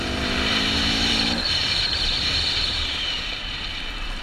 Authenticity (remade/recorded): remade